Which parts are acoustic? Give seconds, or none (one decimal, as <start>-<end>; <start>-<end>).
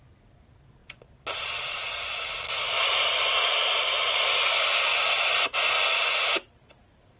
0.0-0.8; 2.2-3.6; 4.2-7.2